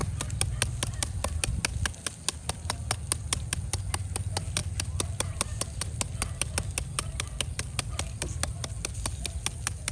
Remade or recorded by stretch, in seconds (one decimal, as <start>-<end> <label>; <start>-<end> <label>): 0.0-9.9 recorded